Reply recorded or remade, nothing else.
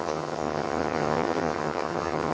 remade